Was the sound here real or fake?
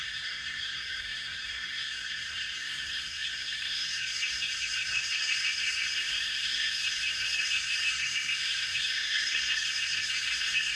fake